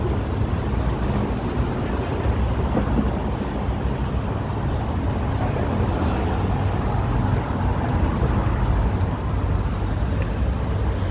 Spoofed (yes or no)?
no